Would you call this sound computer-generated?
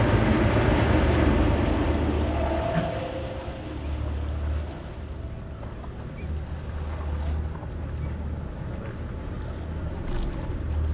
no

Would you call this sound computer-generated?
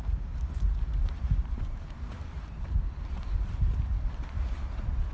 yes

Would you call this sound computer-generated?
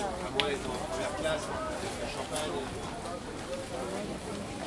no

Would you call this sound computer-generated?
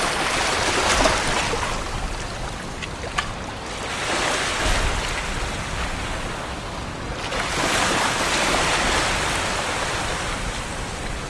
no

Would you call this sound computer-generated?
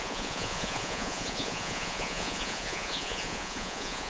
yes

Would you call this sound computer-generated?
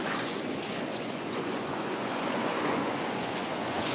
yes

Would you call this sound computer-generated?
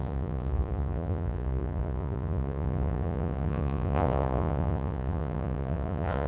yes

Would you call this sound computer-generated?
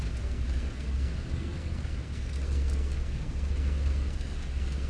yes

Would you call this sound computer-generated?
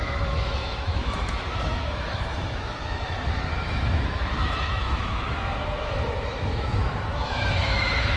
yes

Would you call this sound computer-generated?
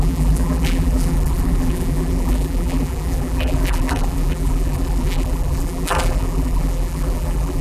yes